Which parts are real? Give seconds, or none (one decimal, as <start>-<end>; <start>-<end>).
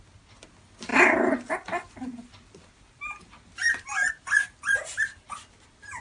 0.0-0.9; 4.1-6.0